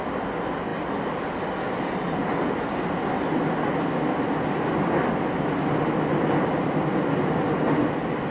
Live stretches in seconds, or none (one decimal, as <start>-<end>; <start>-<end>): 0.0-8.3